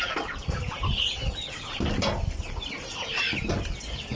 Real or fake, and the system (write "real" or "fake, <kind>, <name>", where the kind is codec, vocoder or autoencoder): real